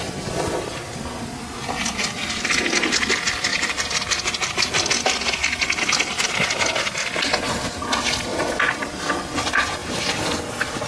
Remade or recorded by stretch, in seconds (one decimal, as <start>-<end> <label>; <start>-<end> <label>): 0.0-3.5 recorded; 3.5-4.9 remade; 4.9-9.8 recorded; 9.8-10.9 remade